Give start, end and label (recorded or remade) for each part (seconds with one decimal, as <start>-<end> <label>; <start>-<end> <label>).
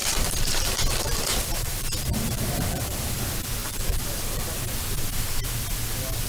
0.0-3.2 remade; 3.2-3.6 recorded; 3.6-4.6 remade; 4.6-6.3 recorded